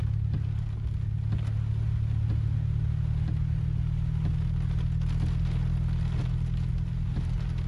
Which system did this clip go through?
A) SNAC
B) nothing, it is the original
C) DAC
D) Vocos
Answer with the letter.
B